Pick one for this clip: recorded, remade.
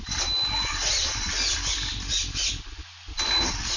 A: recorded